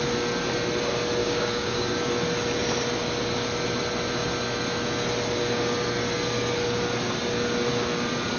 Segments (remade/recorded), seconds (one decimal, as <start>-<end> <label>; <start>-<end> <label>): 0.0-1.2 recorded; 1.2-2.1 remade; 2.1-8.4 recorded